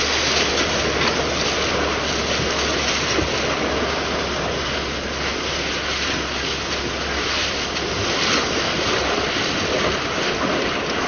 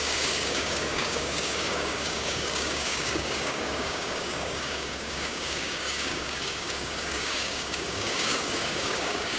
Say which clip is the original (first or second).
first